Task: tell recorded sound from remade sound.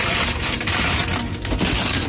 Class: recorded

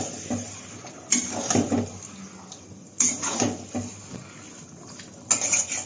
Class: recorded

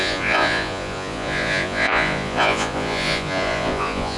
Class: remade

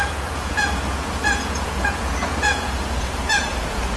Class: remade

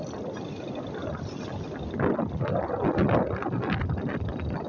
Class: recorded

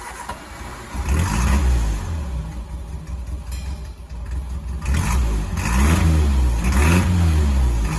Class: recorded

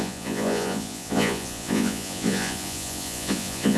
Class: remade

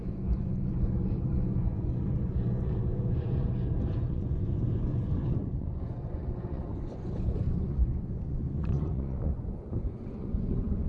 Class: remade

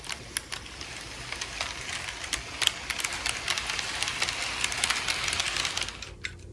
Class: recorded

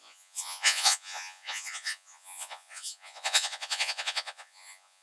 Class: remade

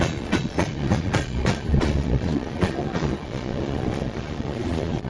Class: remade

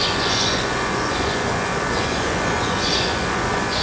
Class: remade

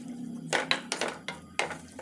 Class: recorded